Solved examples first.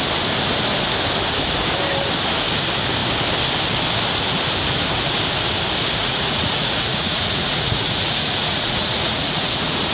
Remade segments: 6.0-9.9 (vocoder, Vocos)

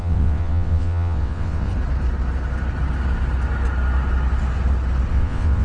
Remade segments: 0.0-1.7 (vocoder, WaveNeXt); 5.1-5.6

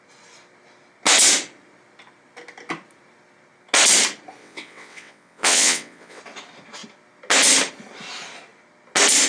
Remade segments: 4.4-6.2 (vocoder, WaveNeXt)